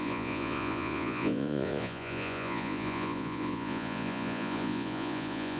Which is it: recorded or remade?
remade